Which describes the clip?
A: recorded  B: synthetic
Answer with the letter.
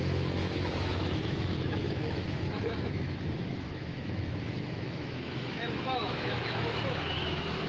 B